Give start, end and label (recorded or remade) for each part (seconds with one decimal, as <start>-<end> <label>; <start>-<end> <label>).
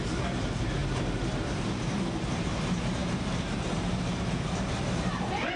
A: 0.0-5.6 remade